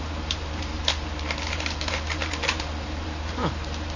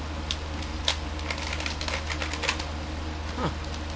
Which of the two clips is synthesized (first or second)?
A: first